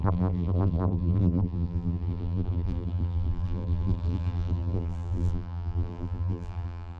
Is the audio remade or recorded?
remade